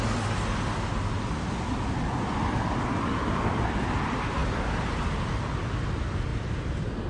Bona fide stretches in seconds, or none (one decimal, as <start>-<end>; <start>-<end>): 0.0-7.1